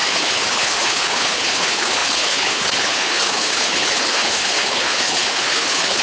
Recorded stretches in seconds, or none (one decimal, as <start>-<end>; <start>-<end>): none